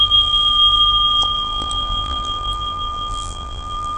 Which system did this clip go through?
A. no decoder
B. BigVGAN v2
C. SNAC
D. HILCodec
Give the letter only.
B